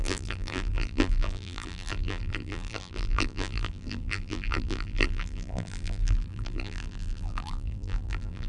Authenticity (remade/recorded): remade